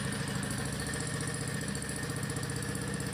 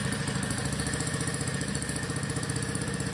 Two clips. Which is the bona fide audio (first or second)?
first